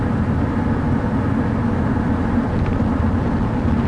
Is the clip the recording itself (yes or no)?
yes